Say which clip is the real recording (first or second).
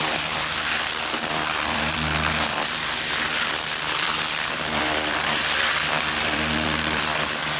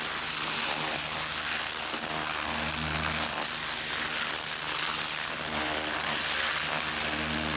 second